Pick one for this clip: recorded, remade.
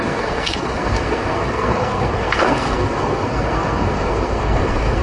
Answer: remade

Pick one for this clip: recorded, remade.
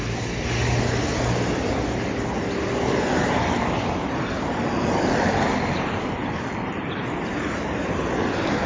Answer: recorded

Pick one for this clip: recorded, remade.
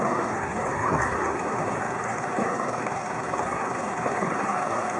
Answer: remade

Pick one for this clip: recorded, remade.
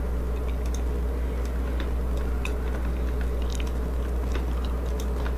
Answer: recorded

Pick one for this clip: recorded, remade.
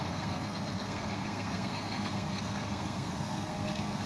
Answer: remade